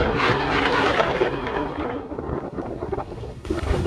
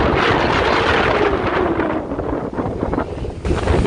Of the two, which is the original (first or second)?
second